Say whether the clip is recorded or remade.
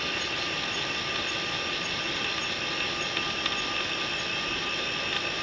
recorded